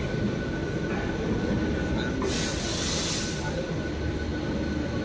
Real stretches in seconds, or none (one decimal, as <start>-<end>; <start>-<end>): 0.0-5.0